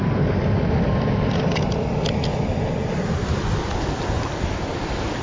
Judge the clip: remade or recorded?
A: recorded